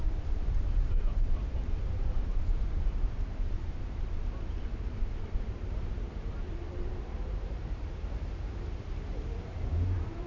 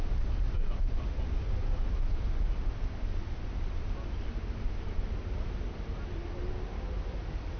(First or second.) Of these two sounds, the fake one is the first